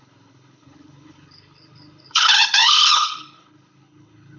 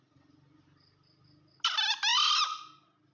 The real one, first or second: second